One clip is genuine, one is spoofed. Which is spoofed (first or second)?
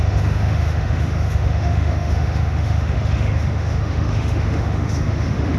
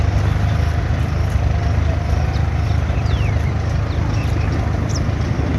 first